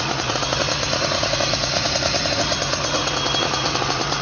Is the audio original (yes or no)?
no